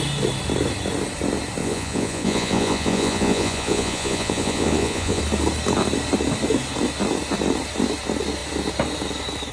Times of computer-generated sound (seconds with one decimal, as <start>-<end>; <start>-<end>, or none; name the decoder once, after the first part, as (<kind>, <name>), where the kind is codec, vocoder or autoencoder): 1.6-5.2 (vocoder, Vocos)